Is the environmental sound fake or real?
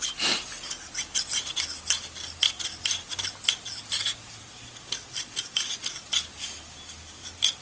real